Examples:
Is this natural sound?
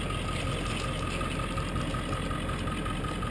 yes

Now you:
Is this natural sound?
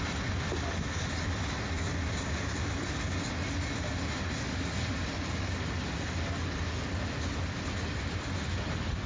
yes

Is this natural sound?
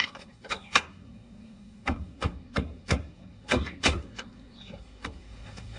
no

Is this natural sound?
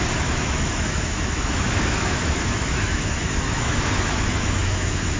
no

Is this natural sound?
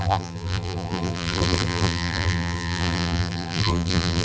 no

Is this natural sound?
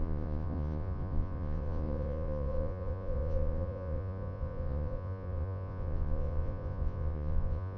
no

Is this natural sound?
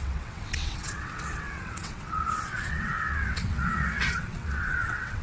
no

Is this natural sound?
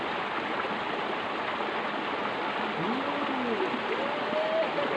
yes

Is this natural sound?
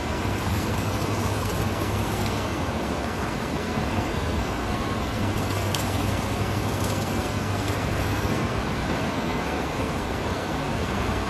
no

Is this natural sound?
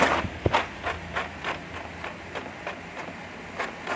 yes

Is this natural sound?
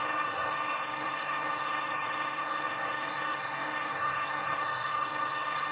no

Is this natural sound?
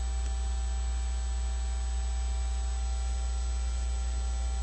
yes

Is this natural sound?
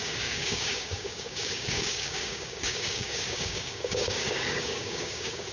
no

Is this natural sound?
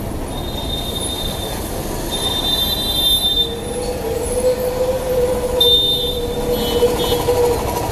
yes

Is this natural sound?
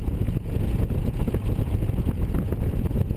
no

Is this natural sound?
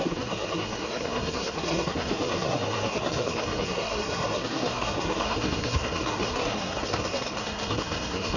no